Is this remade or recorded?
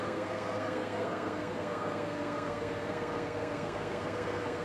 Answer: remade